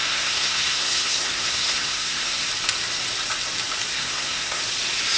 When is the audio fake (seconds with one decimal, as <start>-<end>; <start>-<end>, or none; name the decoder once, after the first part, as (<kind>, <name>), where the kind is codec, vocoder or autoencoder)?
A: 0.0-2.5 (codec, SNAC); 3.9-4.6